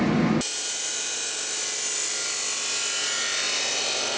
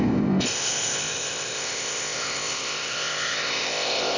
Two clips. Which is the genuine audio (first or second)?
first